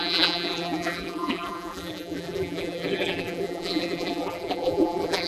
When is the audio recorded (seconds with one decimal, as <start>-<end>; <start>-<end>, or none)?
none